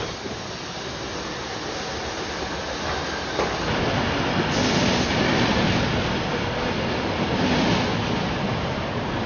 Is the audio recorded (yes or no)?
yes